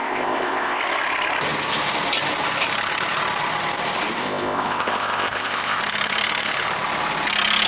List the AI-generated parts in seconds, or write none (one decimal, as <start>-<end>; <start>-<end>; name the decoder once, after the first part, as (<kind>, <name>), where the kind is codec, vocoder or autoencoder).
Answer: 0.0-0.8 (codec, ZipCodec); 4.2-5.8